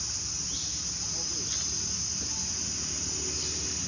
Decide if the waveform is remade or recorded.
recorded